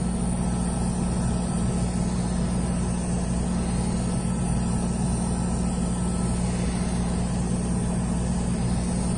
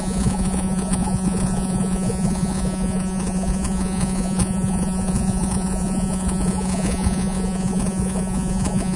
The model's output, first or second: second